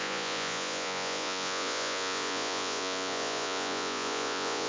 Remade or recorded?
remade